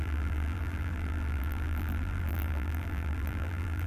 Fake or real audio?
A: fake